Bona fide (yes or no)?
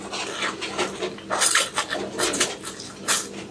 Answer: yes